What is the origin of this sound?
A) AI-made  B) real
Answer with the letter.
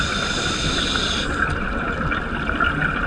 B